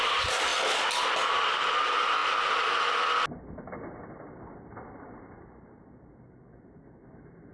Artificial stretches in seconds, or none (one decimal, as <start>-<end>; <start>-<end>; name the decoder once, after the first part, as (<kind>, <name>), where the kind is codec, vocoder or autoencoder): none